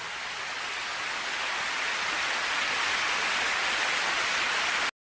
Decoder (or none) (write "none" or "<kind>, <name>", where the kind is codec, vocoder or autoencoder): none